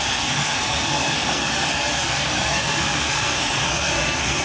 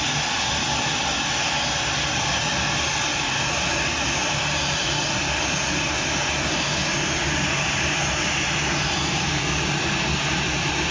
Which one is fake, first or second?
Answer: first